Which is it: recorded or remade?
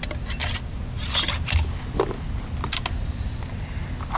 recorded